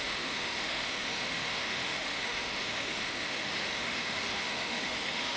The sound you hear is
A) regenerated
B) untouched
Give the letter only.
A